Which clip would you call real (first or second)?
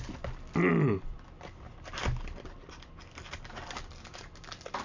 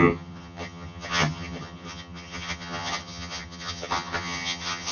first